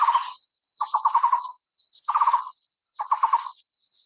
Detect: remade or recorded recorded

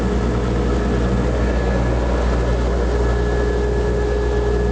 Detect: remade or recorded recorded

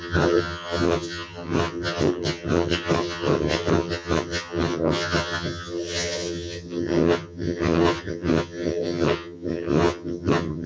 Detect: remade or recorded remade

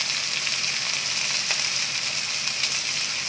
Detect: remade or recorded recorded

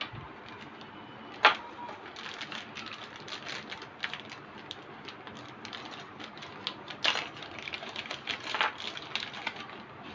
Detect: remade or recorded recorded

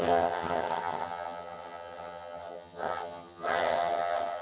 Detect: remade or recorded remade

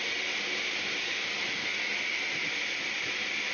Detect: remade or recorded recorded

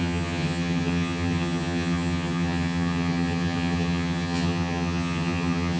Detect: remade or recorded remade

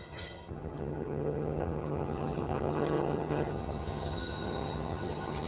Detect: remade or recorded remade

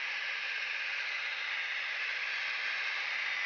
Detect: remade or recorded recorded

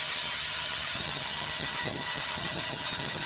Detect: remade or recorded remade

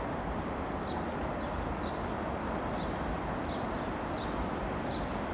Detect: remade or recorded recorded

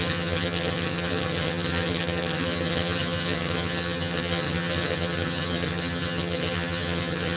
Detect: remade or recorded remade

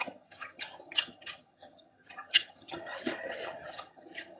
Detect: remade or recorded remade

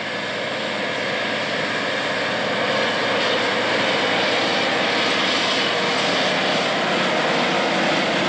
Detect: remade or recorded recorded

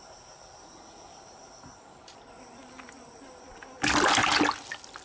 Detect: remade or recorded recorded